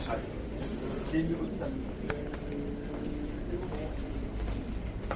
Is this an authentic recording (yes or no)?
yes